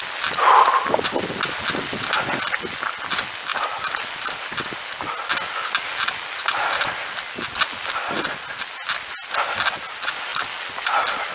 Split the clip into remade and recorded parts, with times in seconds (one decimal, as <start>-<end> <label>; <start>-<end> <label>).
0.0-11.3 recorded

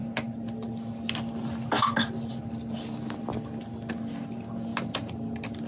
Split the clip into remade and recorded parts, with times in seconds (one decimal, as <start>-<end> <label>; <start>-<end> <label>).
0.0-5.7 recorded

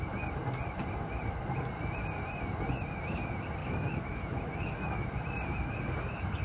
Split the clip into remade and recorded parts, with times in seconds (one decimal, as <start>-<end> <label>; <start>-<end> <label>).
0.0-3.6 recorded; 3.6-5.2 remade; 5.2-6.4 recorded

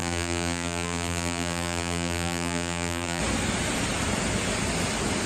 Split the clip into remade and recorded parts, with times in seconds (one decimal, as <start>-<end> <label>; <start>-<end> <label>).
0.0-3.2 remade; 3.2-5.3 recorded

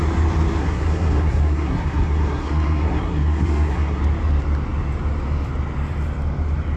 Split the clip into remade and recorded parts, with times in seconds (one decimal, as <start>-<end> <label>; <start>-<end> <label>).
0.0-0.6 recorded; 0.6-4.0 remade; 4.0-6.8 recorded